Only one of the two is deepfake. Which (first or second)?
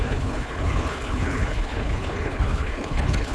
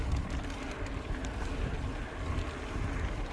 first